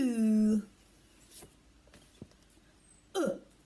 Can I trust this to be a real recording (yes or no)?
yes